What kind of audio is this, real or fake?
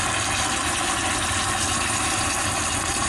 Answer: real